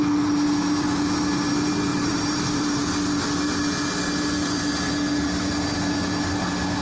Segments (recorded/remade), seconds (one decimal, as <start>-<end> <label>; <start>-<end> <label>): 0.0-1.9 recorded; 1.9-2.8 remade; 2.8-6.8 recorded